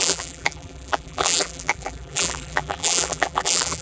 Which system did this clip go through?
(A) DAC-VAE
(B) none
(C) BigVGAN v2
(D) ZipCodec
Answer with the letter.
C